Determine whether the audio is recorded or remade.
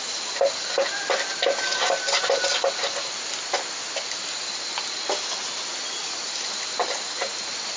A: recorded